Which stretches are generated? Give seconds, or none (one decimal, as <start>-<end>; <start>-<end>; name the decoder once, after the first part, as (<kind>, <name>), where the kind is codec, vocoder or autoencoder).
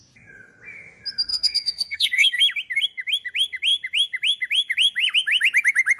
1.3-2.4 (codec, SNAC)